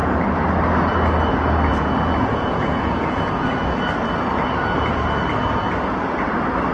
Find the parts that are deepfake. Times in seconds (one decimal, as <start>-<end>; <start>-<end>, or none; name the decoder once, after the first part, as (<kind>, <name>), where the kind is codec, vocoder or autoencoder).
1.7-3.8 (vocoder, Vocos)